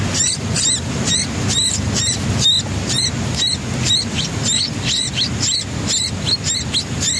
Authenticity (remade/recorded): recorded